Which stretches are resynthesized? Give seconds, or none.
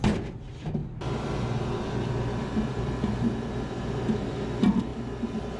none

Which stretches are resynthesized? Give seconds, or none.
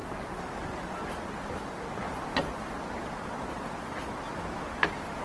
none